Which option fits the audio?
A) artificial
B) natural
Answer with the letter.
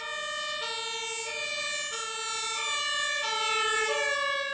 B